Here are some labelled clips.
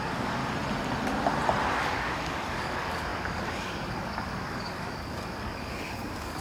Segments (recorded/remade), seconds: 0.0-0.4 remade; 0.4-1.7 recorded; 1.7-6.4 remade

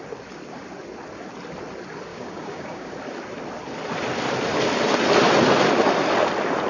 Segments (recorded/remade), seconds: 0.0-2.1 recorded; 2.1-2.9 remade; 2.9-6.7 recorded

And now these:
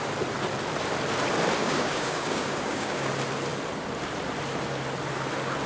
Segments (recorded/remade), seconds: 0.0-1.6 recorded; 1.6-3.1 remade; 3.1-5.7 recorded

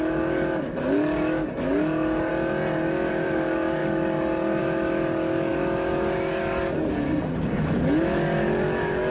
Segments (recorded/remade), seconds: 0.0-2.3 remade; 2.3-3.1 recorded; 3.1-9.1 remade

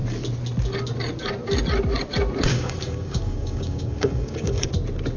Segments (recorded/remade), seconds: 0.0-2.5 recorded; 2.5-4.7 remade; 4.7-5.2 recorded